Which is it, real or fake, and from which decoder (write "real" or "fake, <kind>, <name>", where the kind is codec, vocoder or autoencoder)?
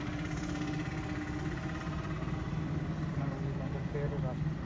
real